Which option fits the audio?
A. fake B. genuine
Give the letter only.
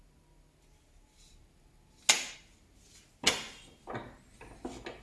B